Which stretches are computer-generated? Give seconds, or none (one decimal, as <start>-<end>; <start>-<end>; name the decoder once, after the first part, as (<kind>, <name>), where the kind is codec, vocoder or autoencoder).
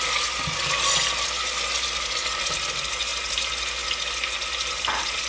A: none